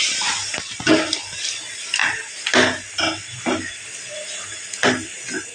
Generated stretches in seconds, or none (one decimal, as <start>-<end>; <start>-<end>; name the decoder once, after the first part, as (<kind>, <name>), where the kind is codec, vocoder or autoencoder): none